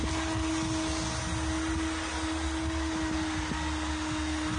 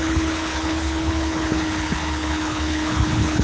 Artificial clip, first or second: second